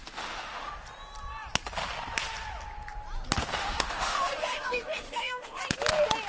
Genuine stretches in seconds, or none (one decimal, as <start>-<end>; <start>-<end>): 0.7-3.6; 5.6-6.3